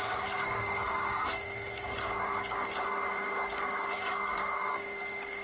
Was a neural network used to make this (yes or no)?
yes